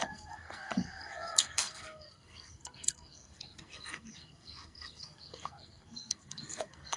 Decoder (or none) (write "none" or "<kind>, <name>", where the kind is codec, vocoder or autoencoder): codec, SNAC